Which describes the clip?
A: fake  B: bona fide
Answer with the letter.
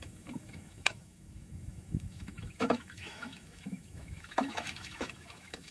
A